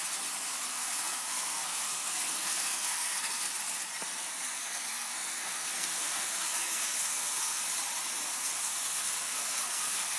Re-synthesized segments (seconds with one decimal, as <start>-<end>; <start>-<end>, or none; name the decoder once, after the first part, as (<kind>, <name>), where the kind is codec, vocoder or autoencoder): 0.7-3.5 (codec, SNAC); 4.2-7.6; 8.3-10.2